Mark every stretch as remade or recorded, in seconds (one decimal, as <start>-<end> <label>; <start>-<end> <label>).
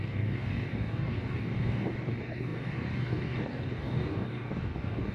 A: 0.0-5.1 remade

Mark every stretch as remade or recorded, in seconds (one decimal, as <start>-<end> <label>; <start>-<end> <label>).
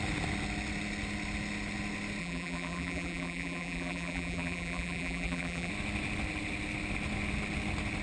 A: 0.0-2.2 recorded; 2.2-5.7 remade; 5.7-8.0 recorded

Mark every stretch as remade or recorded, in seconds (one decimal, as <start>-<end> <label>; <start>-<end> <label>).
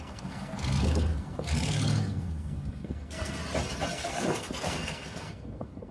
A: 0.0-3.4 remade; 3.4-3.9 recorded; 3.9-5.9 remade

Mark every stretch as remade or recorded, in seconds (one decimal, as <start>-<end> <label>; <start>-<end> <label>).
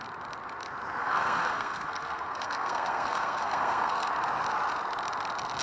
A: 0.0-1.0 recorded; 1.0-4.1 remade; 4.1-5.6 recorded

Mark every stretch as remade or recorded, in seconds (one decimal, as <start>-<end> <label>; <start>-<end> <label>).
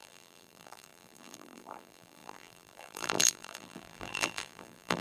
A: 0.0-5.0 remade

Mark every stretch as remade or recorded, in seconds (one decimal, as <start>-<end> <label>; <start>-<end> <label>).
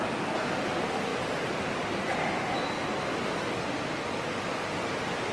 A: 0.0-5.3 recorded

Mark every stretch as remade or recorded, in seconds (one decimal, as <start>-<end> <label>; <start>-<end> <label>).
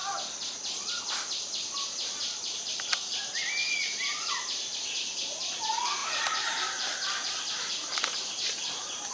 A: 0.0-6.0 recorded; 6.0-9.1 remade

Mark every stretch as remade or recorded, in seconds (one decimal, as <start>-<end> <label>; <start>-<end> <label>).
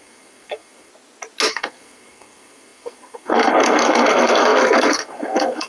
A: 0.0-0.9 remade; 0.9-1.5 recorded; 1.5-5.7 remade